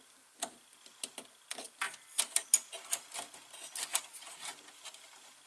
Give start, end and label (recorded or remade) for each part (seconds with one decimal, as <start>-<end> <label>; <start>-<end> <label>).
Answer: 0.0-5.5 recorded